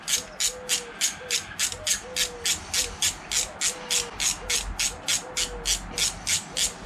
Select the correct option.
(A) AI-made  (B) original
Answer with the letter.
B